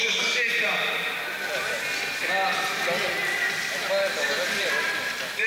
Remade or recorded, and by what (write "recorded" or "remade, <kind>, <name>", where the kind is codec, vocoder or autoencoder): recorded